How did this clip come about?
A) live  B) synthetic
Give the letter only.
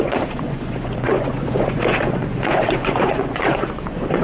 B